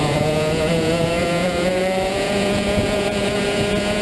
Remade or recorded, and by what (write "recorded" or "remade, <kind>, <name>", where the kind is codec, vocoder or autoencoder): remade, vocoder, Vocos